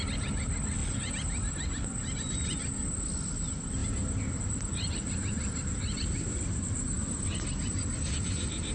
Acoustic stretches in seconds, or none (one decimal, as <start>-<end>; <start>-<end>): 0.0-8.7